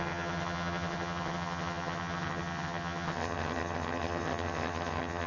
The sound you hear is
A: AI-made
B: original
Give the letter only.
A